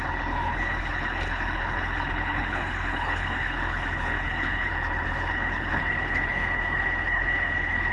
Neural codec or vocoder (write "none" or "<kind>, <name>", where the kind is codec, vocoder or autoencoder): codec, HILCodec